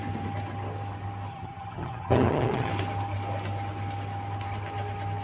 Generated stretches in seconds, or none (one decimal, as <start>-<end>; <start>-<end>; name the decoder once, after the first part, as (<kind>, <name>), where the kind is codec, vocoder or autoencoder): 1.3-2.7 (vocoder, HiFi-GAN)